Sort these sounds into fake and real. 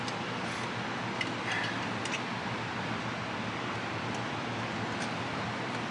fake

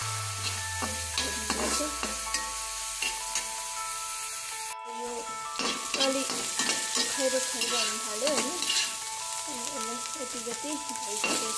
real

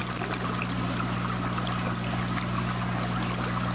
real